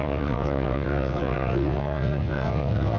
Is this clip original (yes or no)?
no